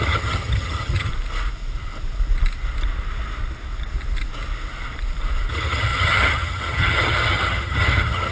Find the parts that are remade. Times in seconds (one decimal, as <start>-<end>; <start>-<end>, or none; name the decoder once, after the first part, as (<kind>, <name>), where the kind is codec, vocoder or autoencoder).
0.0-1.1 (vocoder, HiFi-GAN); 5.5-8.3